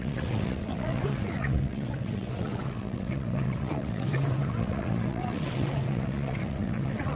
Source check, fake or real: fake